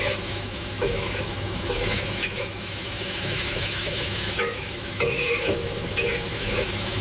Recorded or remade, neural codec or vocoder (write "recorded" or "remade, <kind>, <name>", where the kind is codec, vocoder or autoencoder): remade, autoencoder, DAC-VAE